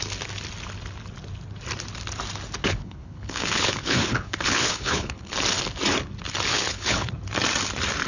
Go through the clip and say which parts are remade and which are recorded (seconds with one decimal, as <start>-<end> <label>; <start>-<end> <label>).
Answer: 0.0-2.6 recorded; 2.6-5.4 remade; 5.4-6.5 recorded; 6.5-7.1 remade; 7.1-8.1 recorded